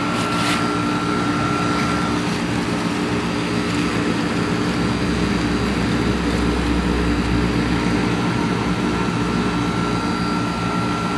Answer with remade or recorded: recorded